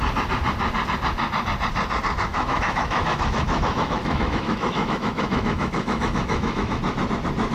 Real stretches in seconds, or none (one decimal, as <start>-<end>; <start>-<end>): 0.0-2.3; 6.8-7.5